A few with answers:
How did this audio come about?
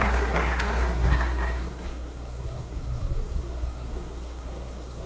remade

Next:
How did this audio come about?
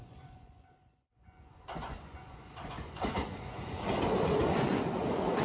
remade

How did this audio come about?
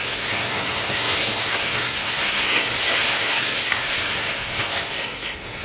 remade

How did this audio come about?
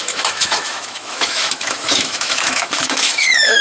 remade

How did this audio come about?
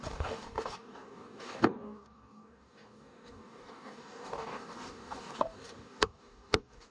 remade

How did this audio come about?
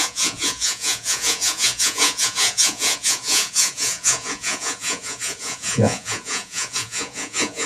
remade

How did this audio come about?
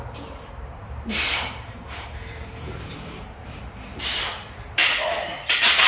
remade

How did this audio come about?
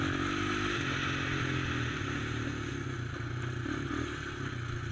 recorded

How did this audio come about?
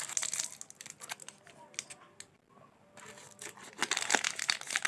recorded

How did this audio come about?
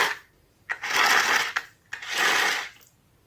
recorded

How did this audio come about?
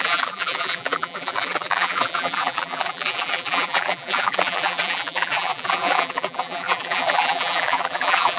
remade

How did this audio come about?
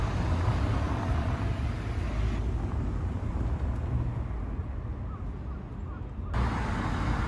recorded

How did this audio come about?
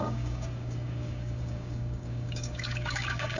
remade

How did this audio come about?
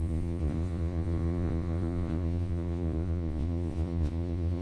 remade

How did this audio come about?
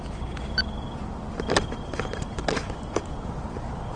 recorded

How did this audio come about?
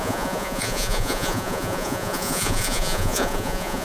remade